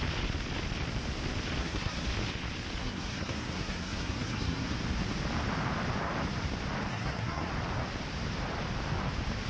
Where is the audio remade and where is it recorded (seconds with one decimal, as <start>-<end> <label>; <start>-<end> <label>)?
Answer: 0.0-1.6 recorded; 1.6-2.1 remade; 2.1-2.8 recorded; 2.8-4.8 remade; 4.8-6.9 recorded; 6.9-7.5 remade; 7.5-9.5 recorded